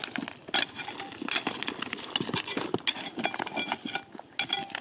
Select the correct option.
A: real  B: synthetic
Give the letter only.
A